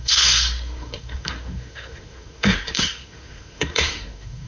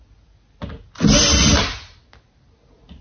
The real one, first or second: second